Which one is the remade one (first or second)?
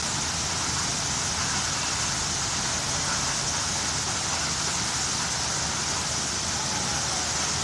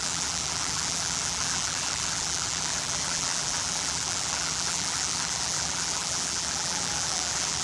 second